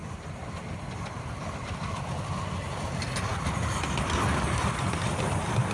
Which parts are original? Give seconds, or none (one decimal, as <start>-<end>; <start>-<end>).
0.0-5.7